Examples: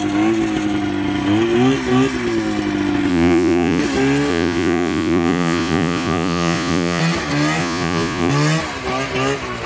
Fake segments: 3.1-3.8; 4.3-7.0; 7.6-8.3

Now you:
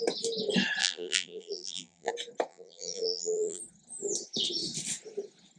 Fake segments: 0.8-2.1; 2.5-3.6

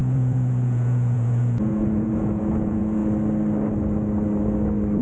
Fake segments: 0.0-3.0

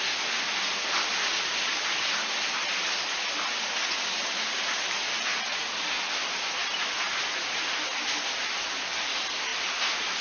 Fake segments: 5.3-6.0

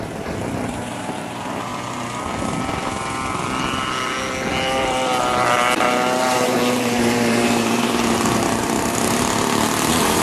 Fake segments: 0.0-1.7; 6.2-10.2

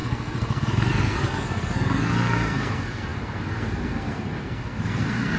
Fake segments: 0.0-5.4